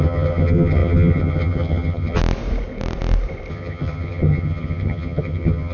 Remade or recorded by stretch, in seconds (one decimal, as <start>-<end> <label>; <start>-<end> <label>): 0.0-2.2 remade; 2.2-3.5 recorded; 3.5-5.7 remade